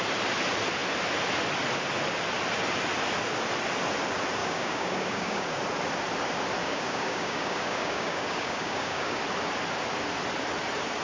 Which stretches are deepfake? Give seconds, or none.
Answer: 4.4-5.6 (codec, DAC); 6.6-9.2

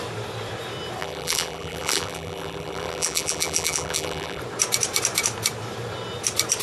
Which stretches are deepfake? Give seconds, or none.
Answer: 1.0-4.4 (vocoder, BigVGAN v2)

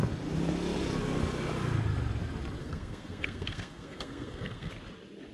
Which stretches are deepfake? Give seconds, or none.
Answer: 2.6-4.7 (codec, SNAC)

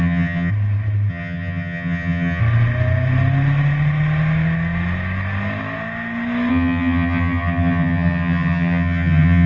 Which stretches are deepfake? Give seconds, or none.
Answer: 0.0-0.5 (vocoder, HiFi-GAN); 1.1-2.4; 6.5-9.5

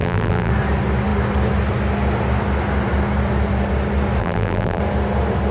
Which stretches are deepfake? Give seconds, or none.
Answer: 0.0-0.5 (vocoder, BigVGAN v2); 4.2-4.8

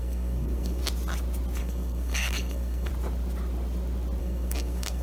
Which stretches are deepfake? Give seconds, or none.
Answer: 0.0-0.8 (codec, SNAC); 1.6-2.9; 4.2-5.0

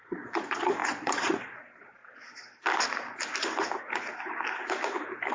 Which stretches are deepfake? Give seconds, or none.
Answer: 0.0-2.0 (vocoder, Vocos)